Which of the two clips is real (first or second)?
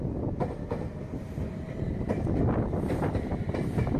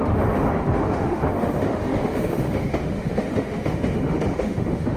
first